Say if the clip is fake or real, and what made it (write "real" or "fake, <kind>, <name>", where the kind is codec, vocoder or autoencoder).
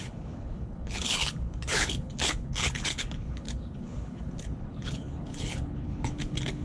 fake, codec, HILCodec